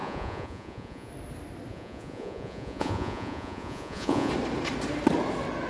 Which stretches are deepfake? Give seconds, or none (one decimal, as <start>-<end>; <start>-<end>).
0.0-1.1; 1.7-4.3